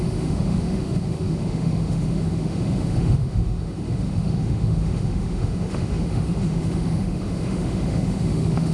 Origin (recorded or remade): remade